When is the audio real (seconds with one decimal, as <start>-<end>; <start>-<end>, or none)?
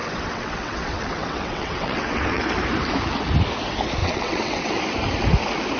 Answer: 2.4-4.0; 4.7-5.8